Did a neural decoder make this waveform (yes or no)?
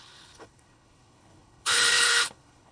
yes